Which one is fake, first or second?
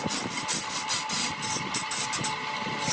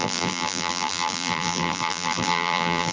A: second